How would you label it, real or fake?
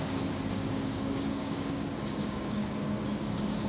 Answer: fake